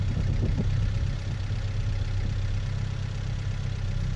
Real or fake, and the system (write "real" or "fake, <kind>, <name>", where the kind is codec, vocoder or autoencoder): real